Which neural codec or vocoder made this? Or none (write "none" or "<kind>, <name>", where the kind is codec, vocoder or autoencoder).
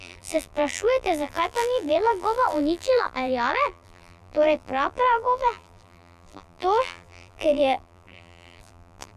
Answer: vocoder, BigVGAN v2